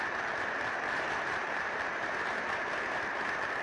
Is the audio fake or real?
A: fake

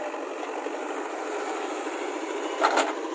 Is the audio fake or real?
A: real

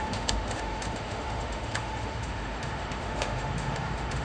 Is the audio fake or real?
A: fake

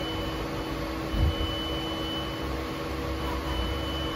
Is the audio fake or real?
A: real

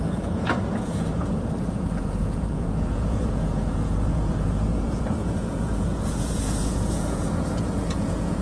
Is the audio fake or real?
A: fake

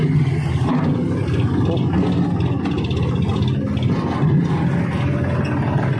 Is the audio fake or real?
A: real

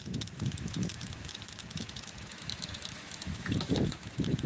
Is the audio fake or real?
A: fake